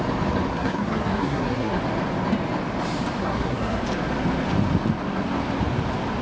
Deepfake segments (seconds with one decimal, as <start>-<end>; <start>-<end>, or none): 0.5-1.8; 3.2-3.8